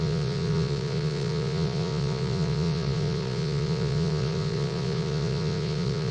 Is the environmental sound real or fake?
fake